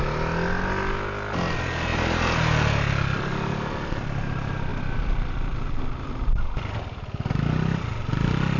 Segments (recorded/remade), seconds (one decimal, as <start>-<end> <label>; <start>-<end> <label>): 0.0-8.6 recorded